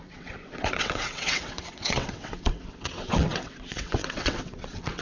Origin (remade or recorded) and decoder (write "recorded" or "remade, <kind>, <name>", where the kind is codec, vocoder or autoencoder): remade, vocoder, WaveNeXt